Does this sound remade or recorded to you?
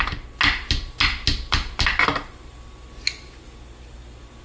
recorded